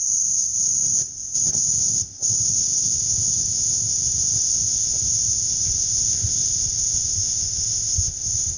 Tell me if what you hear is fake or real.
fake